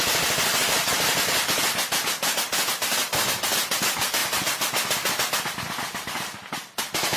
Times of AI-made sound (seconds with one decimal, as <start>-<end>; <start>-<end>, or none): none